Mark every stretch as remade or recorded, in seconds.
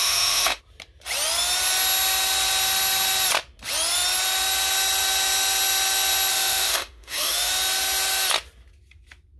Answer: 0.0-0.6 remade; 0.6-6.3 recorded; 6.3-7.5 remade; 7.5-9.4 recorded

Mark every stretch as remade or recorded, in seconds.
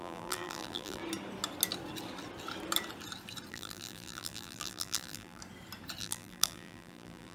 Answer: 0.0-1.0 remade; 1.0-3.5 recorded; 3.5-5.4 remade; 5.4-6.0 recorded; 6.0-7.3 remade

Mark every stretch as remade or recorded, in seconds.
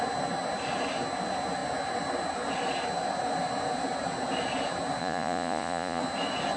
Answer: 0.0-5.0 recorded; 5.0-6.0 remade; 6.0-6.6 recorded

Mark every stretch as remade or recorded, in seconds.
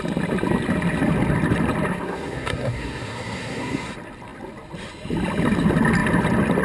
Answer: 0.0-1.9 recorded; 1.9-3.9 remade; 3.9-6.6 recorded